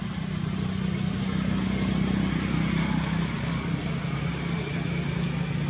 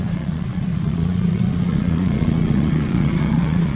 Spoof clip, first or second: second